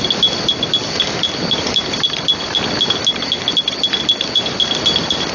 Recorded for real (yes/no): yes